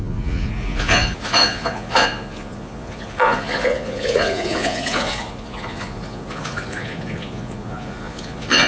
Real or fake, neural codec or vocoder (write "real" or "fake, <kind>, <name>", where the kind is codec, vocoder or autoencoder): fake, vocoder, Vocos